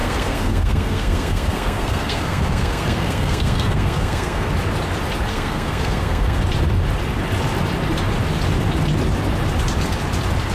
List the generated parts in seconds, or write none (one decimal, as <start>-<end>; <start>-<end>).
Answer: 0.0-4.5; 5.3-6.4